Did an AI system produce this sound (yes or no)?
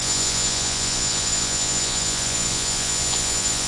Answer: yes